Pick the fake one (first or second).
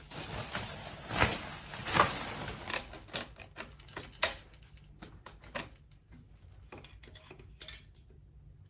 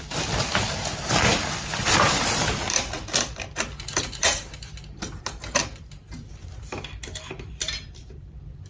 second